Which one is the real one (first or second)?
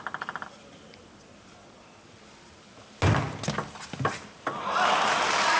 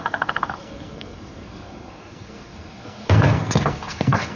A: first